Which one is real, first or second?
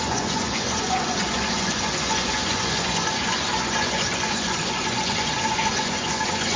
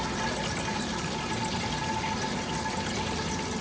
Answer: second